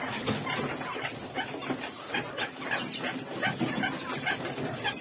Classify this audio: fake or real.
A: real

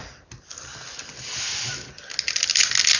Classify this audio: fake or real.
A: real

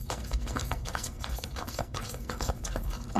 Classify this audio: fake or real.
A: fake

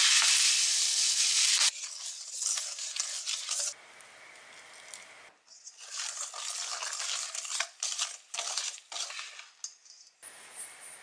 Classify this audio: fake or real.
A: real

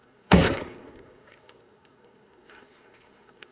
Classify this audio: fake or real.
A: fake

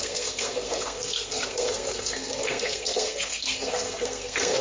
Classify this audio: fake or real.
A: fake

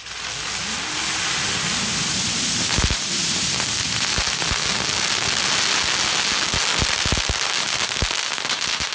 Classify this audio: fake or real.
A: real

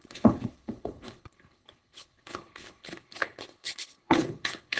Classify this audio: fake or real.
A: fake